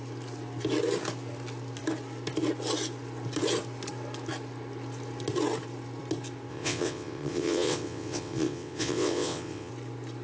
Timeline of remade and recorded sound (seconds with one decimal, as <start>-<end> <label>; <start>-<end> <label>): 0.0-6.5 recorded; 6.5-9.7 remade; 9.7-10.2 recorded